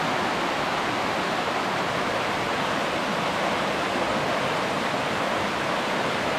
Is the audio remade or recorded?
recorded